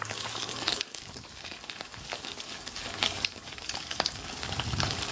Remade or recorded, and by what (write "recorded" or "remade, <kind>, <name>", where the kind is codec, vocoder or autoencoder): remade, codec, DAC